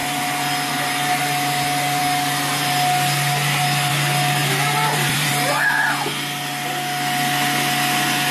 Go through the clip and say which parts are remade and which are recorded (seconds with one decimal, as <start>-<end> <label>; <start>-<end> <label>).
0.0-4.4 recorded; 4.4-5.3 remade; 5.3-8.3 recorded